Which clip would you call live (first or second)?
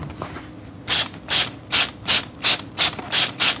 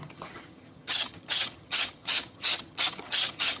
first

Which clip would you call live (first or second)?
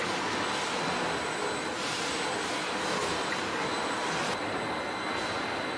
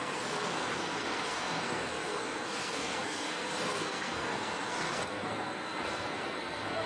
first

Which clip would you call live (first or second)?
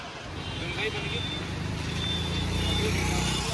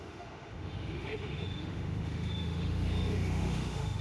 first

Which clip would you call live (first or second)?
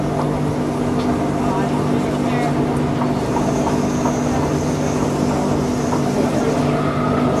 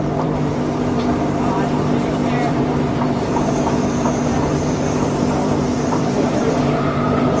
first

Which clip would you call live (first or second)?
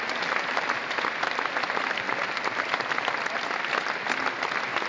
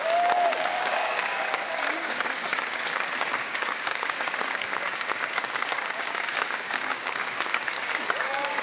first